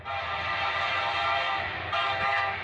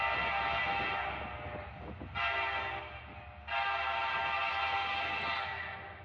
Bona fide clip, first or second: second